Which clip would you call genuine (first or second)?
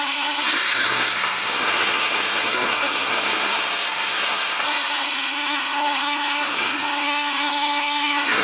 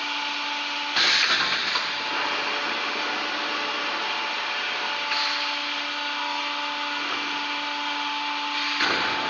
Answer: second